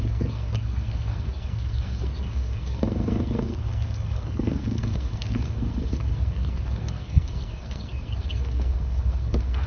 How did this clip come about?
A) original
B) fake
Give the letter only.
B